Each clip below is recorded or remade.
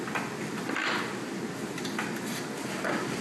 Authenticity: recorded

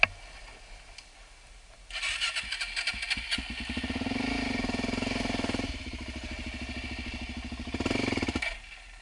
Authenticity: recorded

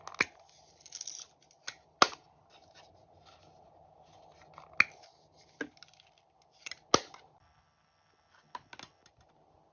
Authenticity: recorded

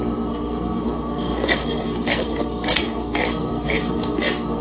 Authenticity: remade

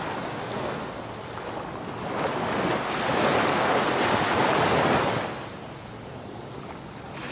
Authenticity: recorded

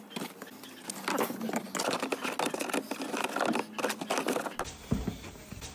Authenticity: recorded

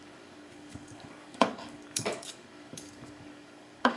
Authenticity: remade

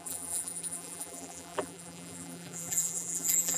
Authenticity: remade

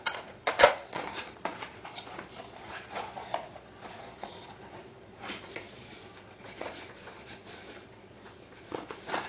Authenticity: remade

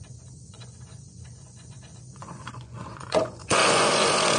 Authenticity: remade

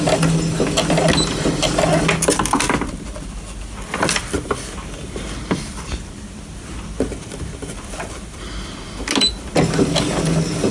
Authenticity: recorded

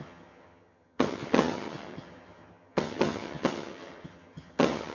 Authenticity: remade